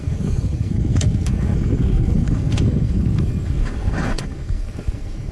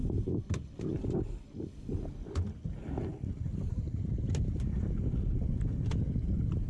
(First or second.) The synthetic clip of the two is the first